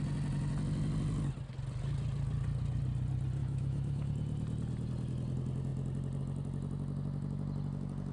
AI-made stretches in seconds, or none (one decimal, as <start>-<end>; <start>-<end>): 3.4-4.1